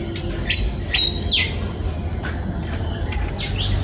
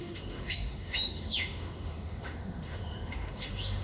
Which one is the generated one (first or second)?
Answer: second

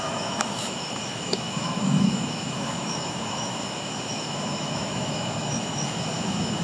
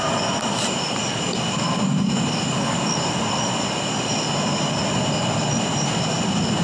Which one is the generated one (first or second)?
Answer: first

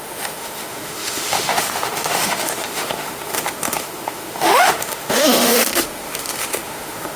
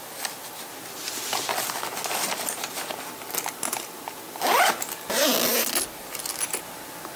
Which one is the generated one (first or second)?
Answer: first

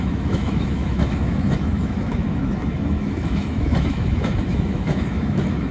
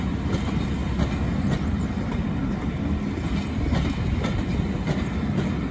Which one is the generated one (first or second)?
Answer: first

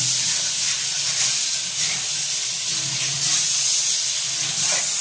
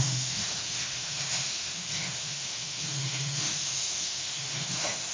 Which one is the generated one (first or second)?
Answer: second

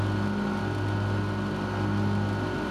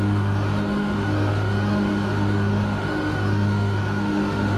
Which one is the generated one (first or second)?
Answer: second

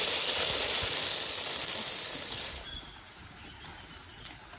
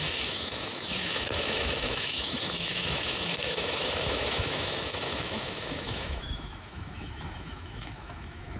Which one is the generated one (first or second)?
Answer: second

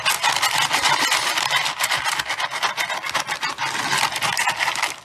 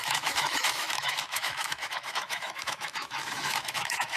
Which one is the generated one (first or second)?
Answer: second